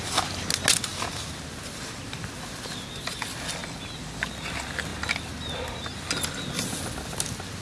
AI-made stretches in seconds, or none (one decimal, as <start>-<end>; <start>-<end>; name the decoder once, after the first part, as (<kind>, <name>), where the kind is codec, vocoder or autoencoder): none